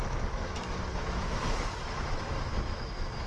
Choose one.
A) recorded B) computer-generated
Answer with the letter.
B